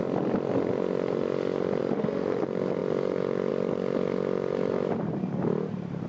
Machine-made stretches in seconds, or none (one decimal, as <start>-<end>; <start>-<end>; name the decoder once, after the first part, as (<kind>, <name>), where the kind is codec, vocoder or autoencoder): 1.8-2.4 (autoencoder, DAC-VAE)

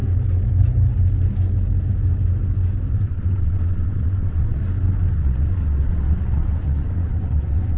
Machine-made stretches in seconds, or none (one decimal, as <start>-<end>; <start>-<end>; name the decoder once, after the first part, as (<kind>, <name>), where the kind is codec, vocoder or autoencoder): 2.9-4.6 (vocoder, WaveNeXt); 5.1-7.8

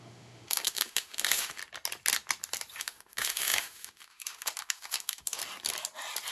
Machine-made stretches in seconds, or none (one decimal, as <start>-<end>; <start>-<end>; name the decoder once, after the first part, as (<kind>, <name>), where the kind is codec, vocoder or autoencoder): 0.0-1.6 (autoencoder, DAC-VAE); 2.8-5.4

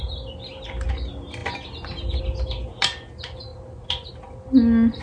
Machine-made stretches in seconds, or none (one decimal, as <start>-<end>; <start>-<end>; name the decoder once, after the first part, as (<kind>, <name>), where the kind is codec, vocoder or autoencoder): none

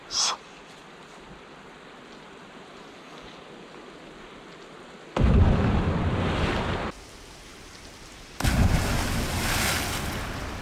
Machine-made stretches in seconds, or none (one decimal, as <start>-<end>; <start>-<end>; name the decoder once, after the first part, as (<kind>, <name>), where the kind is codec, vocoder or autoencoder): none